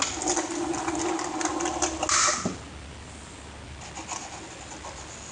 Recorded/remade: recorded